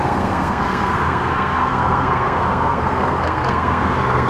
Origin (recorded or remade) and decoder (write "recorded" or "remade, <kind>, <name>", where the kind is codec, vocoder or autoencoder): remade, codec, SNAC